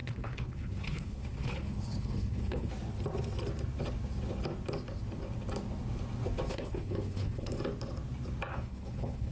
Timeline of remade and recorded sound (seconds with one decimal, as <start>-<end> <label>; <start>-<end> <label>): 0.0-2.7 remade; 2.7-6.5 recorded; 6.5-7.5 remade; 7.5-8.5 recorded; 8.5-9.3 remade